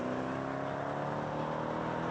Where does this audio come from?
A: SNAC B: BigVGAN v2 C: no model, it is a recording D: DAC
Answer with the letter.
C